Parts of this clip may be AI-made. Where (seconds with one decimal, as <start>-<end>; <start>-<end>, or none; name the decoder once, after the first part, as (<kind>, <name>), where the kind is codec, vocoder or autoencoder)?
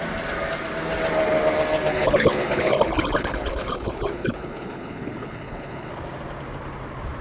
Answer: 1.9-5.9 (codec, HILCodec)